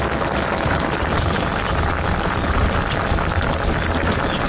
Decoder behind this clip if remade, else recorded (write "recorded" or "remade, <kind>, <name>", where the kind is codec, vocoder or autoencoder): recorded